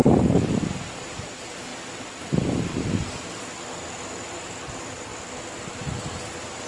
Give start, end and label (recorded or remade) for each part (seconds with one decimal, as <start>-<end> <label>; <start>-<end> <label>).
0.0-0.7 recorded; 0.7-1.7 remade; 1.7-3.7 recorded; 3.7-5.1 remade; 5.1-6.7 recorded